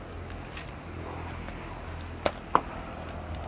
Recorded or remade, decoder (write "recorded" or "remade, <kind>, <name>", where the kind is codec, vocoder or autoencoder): recorded